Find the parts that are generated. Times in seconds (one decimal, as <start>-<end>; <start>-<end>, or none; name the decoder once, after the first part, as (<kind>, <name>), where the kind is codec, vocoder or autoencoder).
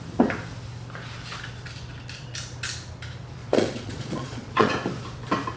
3.4-4.7 (vocoder, Vocos)